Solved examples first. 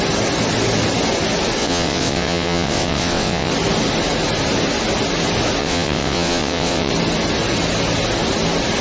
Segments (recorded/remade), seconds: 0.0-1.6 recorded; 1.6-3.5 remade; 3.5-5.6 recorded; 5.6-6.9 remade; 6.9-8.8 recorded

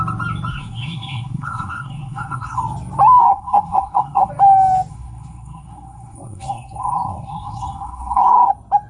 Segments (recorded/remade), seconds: 0.0-0.5 recorded; 0.5-2.6 remade; 2.6-3.2 recorded; 3.2-4.3 remade; 4.3-4.9 recorded; 4.9-8.5 remade; 8.5-8.9 recorded

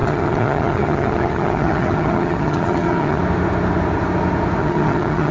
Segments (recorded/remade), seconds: 0.0-3.2 remade; 3.2-4.6 recorded; 4.6-5.3 remade

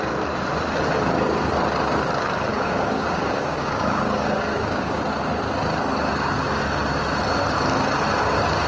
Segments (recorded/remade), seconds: 0.0-2.5 recorded; 2.5-5.0 remade; 5.0-8.7 recorded

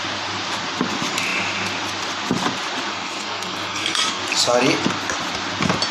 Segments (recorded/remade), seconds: 0.0-2.9 recorded; 2.9-4.2 remade; 4.2-5.9 recorded